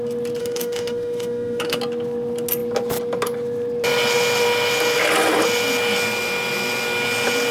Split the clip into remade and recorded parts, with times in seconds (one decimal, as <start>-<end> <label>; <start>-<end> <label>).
0.0-0.4 recorded; 0.4-1.8 remade; 1.8-7.5 recorded